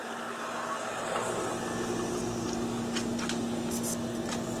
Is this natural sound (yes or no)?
yes